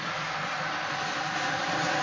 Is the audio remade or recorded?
recorded